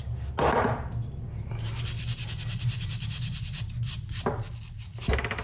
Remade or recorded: recorded